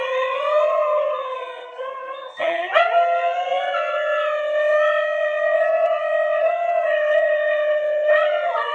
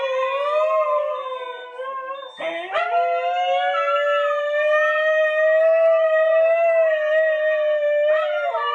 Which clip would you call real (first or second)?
second